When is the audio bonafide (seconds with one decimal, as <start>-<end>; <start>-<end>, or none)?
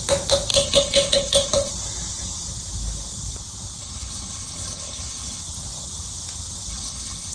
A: 0.0-0.5; 1.7-3.8; 5.4-6.7